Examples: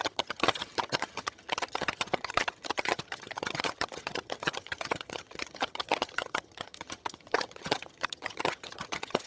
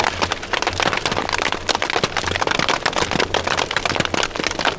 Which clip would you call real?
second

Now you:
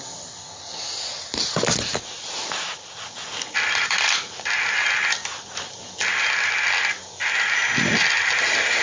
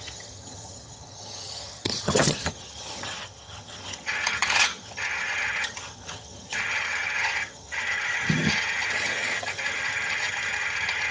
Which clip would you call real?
first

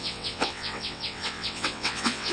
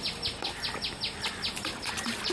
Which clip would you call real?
second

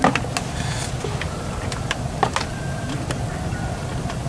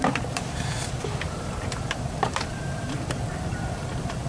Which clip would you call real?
first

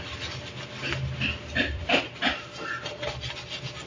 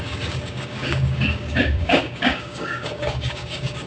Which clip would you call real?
first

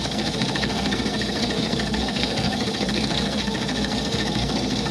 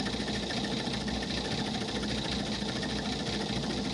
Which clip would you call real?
second